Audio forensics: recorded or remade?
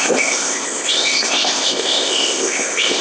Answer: remade